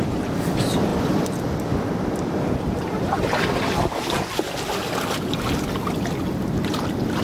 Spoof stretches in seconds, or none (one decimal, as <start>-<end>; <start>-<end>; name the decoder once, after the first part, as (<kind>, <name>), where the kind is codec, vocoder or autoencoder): none